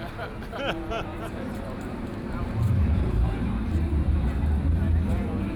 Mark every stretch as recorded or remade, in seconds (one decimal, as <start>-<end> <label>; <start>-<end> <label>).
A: 0.0-1.1 recorded; 1.1-4.5 remade; 4.5-5.6 recorded

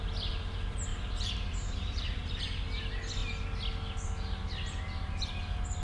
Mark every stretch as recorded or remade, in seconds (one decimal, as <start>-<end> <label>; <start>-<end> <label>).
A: 0.0-0.9 recorded; 0.9-2.4 remade; 2.4-5.8 recorded

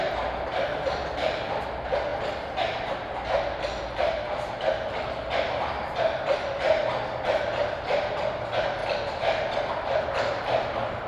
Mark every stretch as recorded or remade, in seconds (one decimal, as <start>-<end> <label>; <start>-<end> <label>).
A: 0.0-11.1 recorded

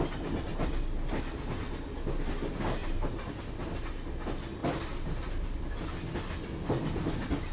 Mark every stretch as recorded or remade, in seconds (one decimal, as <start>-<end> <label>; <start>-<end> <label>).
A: 0.0-2.8 recorded; 2.8-3.3 remade; 3.3-4.6 recorded; 4.6-5.6 remade; 5.6-7.5 recorded

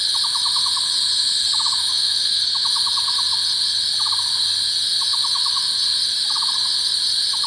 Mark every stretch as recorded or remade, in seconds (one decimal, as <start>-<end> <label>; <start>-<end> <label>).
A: 0.0-1.9 recorded; 1.9-2.4 remade; 2.4-7.5 recorded

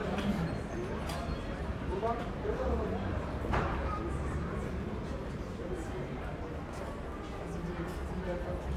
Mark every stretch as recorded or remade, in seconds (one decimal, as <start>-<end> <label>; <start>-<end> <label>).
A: 0.0-0.5 remade; 0.5-1.7 recorded; 1.7-6.6 remade; 6.6-8.8 recorded

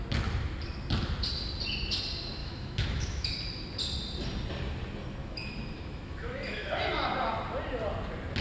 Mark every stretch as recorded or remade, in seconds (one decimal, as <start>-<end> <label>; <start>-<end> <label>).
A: 0.0-2.4 recorded; 2.4-3.3 remade; 3.3-5.2 recorded; 5.2-6.7 remade; 6.7-8.4 recorded

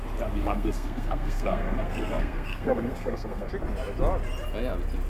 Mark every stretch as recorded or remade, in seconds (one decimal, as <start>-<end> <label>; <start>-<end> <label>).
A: 0.0-0.4 recorded; 0.4-3.5 remade; 3.5-5.1 recorded